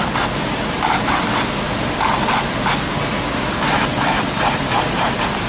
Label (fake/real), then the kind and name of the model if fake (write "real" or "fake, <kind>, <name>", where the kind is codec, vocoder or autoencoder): real